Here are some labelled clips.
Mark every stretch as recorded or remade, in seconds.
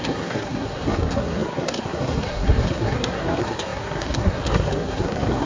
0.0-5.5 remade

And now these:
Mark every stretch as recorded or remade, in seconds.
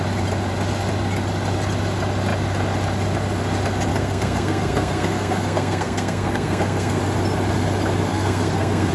0.0-3.9 recorded; 3.9-7.0 remade; 7.0-8.1 recorded; 8.1-8.9 remade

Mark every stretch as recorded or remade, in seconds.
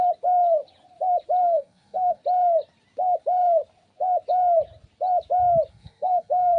0.0-1.4 recorded; 1.4-2.2 remade; 2.2-5.7 recorded; 5.7-6.6 remade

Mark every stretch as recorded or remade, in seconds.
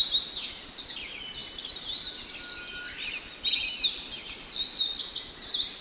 0.0-5.8 recorded